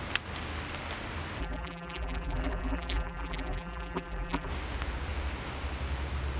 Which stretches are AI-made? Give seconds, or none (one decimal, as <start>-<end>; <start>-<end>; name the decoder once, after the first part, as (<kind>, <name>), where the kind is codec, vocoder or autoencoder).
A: 1.4-4.5 (vocoder, BigVGAN v2)